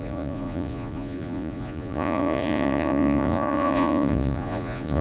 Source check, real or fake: fake